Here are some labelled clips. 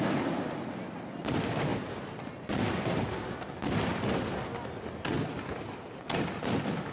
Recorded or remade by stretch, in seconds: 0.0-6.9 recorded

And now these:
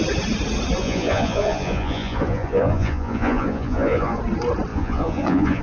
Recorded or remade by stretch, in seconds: 0.0-0.8 recorded; 0.8-4.2 remade; 4.2-4.7 recorded; 4.7-5.6 remade

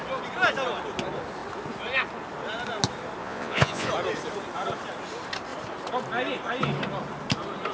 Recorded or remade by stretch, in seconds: 0.0-3.2 recorded; 3.2-3.9 remade; 3.9-7.7 recorded